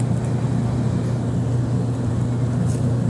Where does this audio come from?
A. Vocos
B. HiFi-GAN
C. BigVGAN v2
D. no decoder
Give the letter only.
D